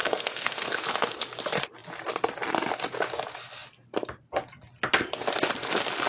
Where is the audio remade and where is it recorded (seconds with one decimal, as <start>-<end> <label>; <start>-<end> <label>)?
0.0-0.8 remade; 0.8-6.1 recorded